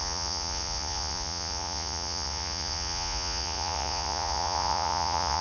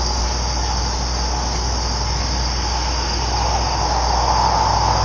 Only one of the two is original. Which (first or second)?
second